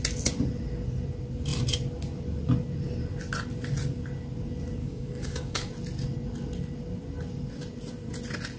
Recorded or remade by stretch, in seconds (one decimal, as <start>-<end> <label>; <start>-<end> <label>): 0.0-4.8 recorded; 4.8-5.7 remade; 5.7-8.6 recorded